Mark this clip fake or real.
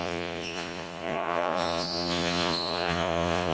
fake